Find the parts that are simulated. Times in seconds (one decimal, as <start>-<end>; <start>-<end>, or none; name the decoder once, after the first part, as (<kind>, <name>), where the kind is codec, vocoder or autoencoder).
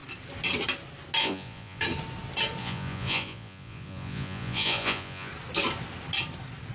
1.2-1.8 (vocoder, Vocos); 2.6-5.3